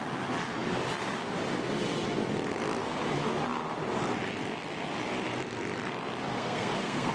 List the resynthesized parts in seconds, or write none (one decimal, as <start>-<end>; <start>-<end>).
6.3-7.1

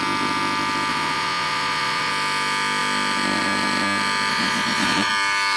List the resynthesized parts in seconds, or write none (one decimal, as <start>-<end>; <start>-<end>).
0.9-2.1; 4.3-5.1

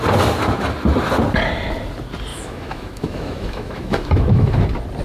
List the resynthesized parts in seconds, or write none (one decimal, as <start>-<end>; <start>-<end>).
2.3-4.6

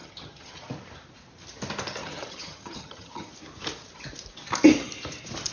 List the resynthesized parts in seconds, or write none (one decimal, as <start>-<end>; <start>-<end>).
0.0-0.6; 2.0-3.3